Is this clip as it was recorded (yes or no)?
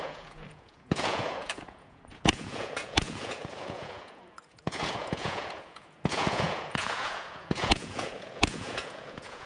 no